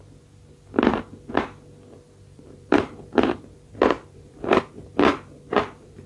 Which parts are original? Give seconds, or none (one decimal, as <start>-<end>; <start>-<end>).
0.0-2.3